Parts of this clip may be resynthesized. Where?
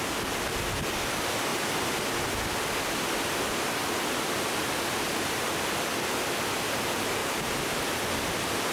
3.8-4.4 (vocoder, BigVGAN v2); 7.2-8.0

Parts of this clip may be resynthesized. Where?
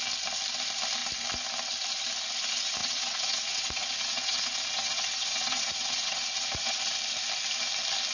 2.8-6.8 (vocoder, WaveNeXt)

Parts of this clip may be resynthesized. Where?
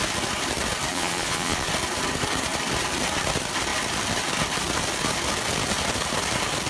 0.9-1.7 (vocoder, Vocos)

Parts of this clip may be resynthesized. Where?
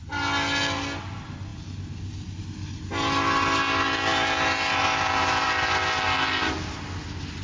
1.5-2.4 (vocoder, BigVGAN v2)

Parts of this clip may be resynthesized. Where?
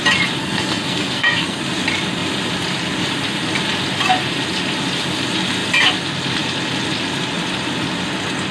0.4-1.6 (codec, SNAC)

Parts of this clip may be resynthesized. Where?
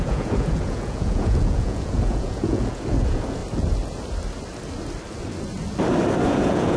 0.0-3.4 (vocoder, Vocos); 6.3-6.8